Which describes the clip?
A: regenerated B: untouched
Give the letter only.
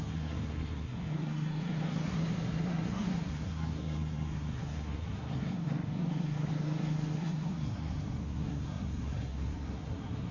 A